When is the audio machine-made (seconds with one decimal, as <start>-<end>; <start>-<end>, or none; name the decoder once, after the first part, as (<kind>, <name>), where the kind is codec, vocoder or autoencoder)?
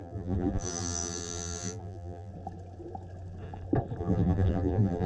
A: 0.0-2.3 (vocoder, BigVGAN v2); 4.0-5.1